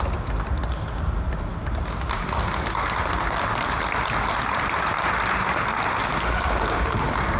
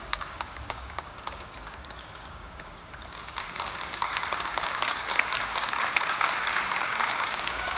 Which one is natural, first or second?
first